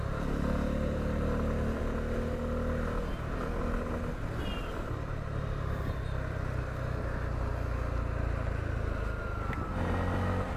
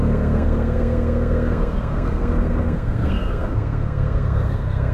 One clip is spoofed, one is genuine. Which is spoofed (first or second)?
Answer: second